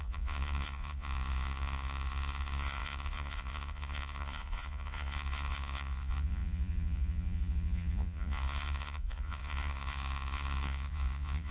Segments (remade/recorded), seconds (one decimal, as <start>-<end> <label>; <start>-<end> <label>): 0.0-11.5 remade